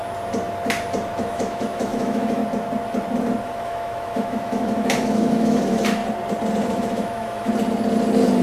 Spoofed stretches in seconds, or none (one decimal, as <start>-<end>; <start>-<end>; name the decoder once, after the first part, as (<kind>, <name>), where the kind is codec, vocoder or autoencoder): 1.2-2.4 (autoencoder, DAC-VAE); 3.4-6.0; 6.6-7.5